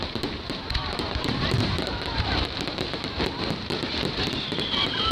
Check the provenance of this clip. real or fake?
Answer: fake